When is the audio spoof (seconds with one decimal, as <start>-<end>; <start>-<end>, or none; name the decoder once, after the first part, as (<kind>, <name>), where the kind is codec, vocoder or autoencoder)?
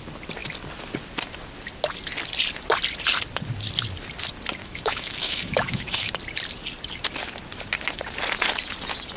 4.6-6.1 (autoencoder, DAC-VAE)